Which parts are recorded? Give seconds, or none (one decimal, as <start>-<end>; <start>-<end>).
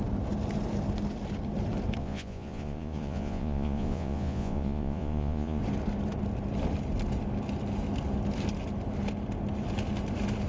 0.0-2.0; 5.6-10.5